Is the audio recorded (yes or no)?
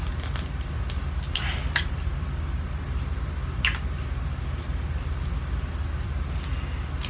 yes